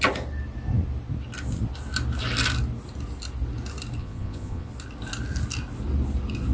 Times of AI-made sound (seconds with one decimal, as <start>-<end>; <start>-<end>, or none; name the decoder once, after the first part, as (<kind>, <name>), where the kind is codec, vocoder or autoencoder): 4.0-4.7 (vocoder, Vocos)